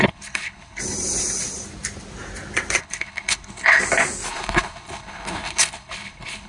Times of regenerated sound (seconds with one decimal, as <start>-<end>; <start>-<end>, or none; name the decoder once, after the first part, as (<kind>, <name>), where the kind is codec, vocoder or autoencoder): 0.0-0.8 (codec, HILCodec); 2.8-3.8; 4.3-6.5